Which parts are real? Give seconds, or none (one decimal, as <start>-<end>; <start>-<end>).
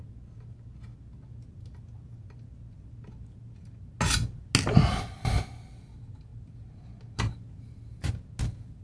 0.0-8.8